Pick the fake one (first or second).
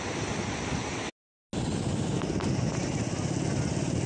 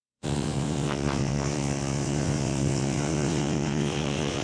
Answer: second